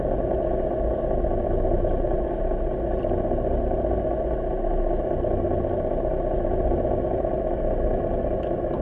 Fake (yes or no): no